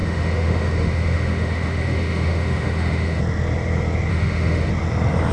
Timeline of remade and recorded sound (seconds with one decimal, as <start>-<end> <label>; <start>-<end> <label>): 0.0-3.2 remade; 3.2-4.1 recorded; 4.1-4.7 remade; 4.7-5.3 recorded